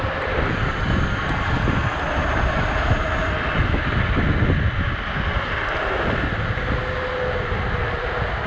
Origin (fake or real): real